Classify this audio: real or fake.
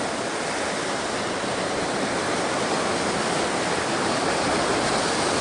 real